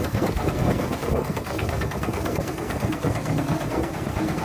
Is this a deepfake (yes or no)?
yes